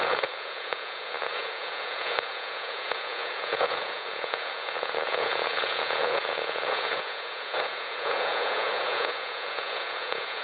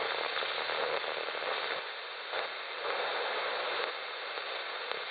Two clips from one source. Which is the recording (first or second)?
second